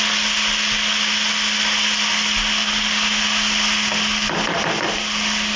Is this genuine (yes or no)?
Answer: yes